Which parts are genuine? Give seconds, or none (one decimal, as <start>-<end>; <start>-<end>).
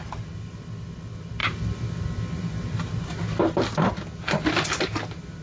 0.0-5.4